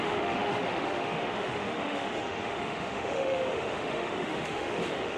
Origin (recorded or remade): remade